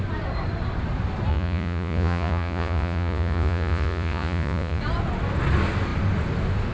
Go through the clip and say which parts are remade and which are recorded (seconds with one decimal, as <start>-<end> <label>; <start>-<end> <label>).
0.0-1.3 recorded; 1.3-4.8 remade; 4.8-6.7 recorded